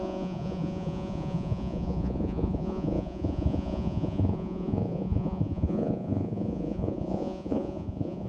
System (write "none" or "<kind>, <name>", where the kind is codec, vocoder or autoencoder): vocoder, Vocos